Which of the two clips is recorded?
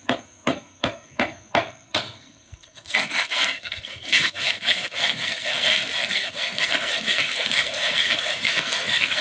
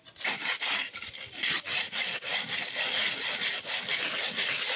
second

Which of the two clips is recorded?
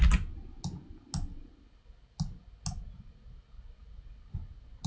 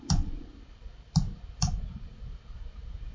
first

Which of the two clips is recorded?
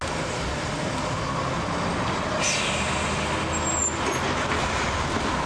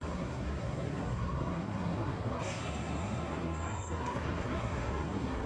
first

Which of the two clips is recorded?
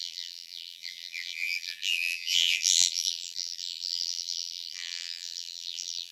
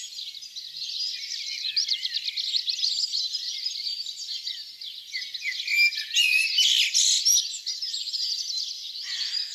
second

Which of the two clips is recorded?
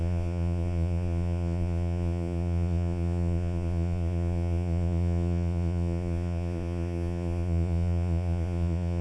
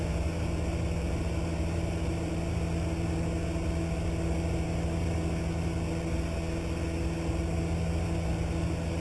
second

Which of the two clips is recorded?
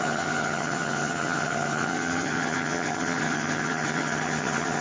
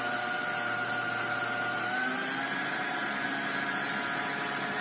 second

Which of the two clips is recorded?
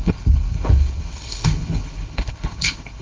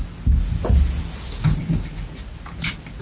second